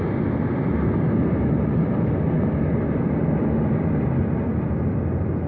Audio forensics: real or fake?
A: real